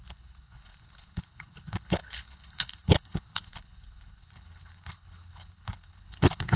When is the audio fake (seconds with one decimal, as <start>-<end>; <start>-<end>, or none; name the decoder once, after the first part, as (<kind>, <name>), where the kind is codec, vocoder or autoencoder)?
0.0-6.6 (codec, HILCodec)